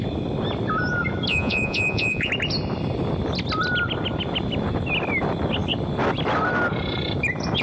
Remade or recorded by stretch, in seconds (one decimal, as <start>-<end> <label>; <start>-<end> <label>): 0.0-1.3 recorded; 1.3-2.3 remade; 2.3-7.6 recorded